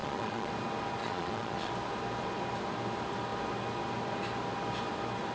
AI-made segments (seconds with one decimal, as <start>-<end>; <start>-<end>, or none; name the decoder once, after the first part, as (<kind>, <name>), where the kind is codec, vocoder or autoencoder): 0.0-0.5 (vocoder, Vocos); 1.0-1.7